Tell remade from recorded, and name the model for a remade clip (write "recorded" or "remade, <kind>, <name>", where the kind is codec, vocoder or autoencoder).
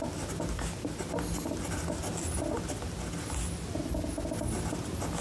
recorded